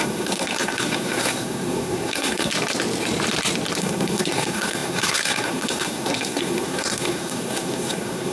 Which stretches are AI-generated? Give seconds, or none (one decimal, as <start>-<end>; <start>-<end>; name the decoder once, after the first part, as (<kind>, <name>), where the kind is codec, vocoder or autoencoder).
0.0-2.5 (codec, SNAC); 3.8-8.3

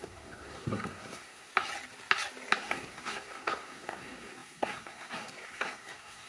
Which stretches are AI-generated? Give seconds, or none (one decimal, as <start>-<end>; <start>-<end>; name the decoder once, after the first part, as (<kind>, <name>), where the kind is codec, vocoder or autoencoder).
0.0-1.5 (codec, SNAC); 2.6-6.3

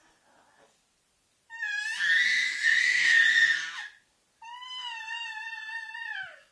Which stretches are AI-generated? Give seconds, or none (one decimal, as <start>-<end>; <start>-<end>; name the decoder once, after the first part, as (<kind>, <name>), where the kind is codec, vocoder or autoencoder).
none

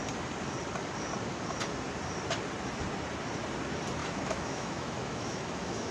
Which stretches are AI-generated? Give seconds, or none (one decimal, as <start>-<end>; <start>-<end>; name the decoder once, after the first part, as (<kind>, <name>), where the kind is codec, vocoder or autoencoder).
4.0-5.9 (autoencoder, DAC-VAE)